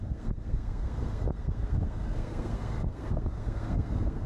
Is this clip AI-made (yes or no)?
yes